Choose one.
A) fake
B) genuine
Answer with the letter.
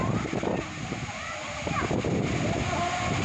B